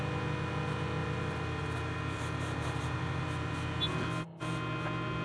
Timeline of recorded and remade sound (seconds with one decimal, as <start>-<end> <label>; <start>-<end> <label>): 0.0-1.0 recorded; 1.0-3.5 remade; 3.5-5.2 recorded